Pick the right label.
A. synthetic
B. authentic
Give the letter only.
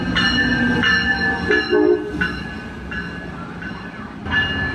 B